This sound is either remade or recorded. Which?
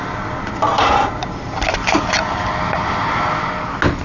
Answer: recorded